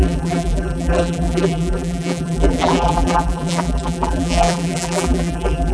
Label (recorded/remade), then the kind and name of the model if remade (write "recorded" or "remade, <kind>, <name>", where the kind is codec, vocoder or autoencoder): remade, vocoder, BigVGAN v2